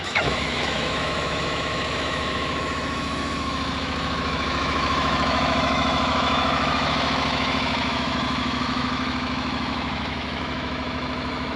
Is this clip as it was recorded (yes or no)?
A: no